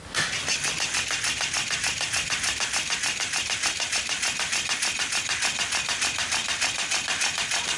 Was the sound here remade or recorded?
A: recorded